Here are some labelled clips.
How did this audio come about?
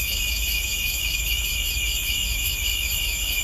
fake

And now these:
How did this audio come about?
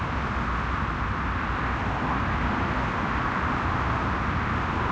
real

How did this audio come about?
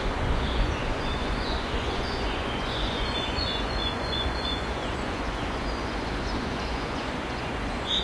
fake